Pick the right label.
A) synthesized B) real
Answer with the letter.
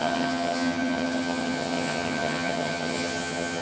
A